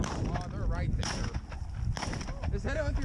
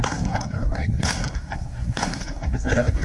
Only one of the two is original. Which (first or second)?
first